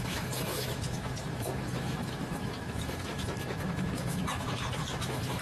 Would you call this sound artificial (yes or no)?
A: yes